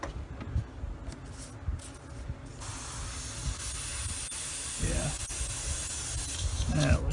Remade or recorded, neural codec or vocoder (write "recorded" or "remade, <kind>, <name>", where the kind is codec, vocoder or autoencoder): recorded